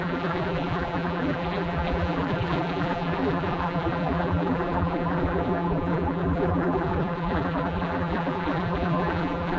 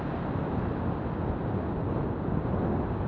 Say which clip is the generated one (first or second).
first